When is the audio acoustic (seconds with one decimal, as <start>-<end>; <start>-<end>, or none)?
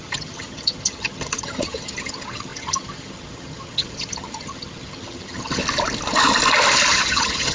5.6-6.9